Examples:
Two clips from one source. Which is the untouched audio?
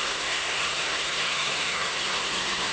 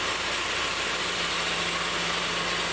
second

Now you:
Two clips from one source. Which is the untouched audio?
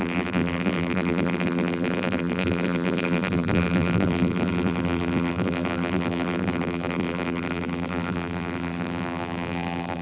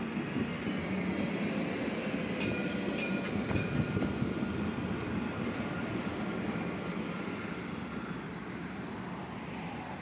second